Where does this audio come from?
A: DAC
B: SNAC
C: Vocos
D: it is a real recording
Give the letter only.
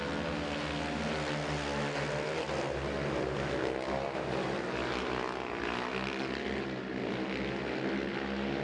D